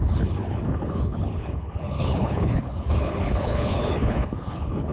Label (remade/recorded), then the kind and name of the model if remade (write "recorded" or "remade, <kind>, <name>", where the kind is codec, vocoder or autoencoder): remade, codec, HILCodec